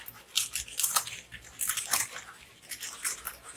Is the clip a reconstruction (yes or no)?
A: yes